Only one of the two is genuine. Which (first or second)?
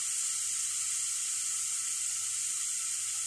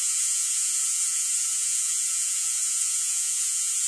first